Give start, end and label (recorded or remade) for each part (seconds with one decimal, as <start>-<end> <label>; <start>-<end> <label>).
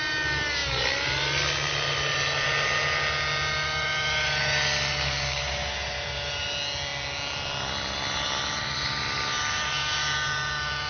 0.0-10.9 recorded